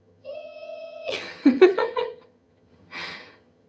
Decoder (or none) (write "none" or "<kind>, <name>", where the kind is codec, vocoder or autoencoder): vocoder, HiFi-GAN